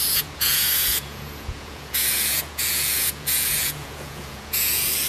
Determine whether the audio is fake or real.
fake